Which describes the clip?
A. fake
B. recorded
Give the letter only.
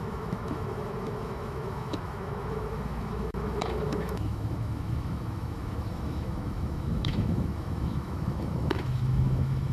A